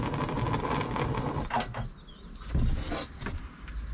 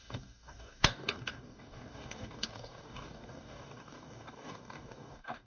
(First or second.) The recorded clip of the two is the first